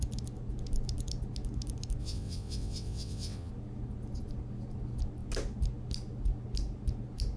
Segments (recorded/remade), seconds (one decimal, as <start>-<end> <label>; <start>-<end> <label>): 0.0-2.0 recorded; 2.0-3.5 remade; 3.5-7.4 recorded